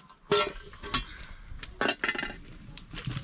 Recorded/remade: recorded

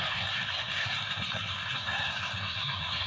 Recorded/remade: remade